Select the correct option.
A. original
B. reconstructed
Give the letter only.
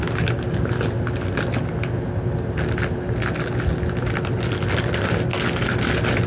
A